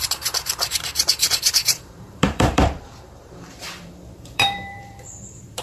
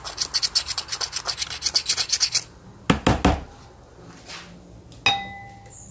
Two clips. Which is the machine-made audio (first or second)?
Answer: first